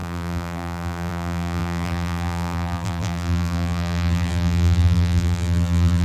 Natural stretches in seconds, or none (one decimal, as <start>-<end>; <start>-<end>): none